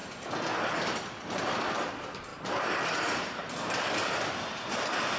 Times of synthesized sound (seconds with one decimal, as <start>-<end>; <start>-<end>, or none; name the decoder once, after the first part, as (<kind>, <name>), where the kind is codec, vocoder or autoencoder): 1.9-2.3 (vocoder, BigVGAN v2); 4.8-5.2